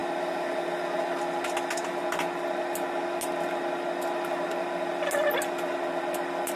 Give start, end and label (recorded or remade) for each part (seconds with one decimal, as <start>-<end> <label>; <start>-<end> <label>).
0.0-0.8 remade; 0.8-6.6 recorded